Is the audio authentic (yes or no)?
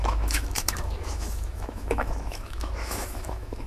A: no